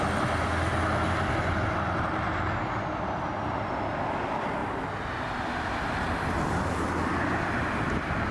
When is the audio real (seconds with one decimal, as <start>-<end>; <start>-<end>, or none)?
0.0-8.3